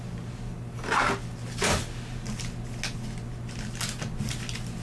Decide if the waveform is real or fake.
real